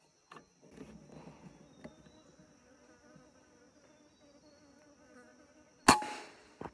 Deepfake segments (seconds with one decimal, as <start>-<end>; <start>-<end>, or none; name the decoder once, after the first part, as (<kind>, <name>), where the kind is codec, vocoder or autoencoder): none